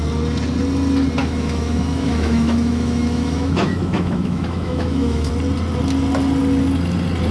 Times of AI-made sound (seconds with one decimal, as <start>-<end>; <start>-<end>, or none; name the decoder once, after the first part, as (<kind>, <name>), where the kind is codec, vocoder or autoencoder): 1.2-5.3 (autoencoder, DAC-VAE)